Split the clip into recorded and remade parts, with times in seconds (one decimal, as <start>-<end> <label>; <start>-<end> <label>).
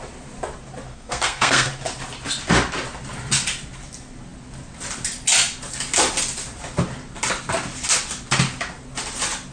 0.0-0.9 recorded; 0.9-1.7 remade; 1.7-9.5 recorded